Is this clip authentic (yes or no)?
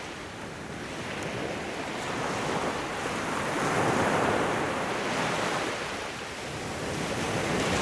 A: yes